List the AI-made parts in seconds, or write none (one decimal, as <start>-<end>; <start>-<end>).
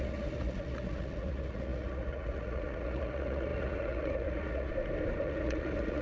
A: 0.0-4.7; 5.2-6.0